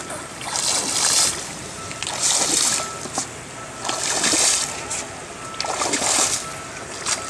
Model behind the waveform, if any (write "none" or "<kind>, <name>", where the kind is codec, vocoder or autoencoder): none